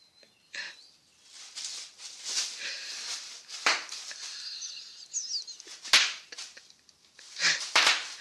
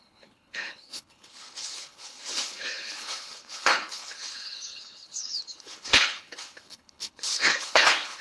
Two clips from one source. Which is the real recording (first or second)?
first